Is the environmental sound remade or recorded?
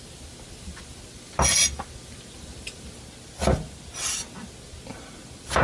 recorded